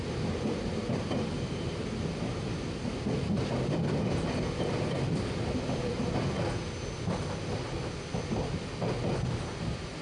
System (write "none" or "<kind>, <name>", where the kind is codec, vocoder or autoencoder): none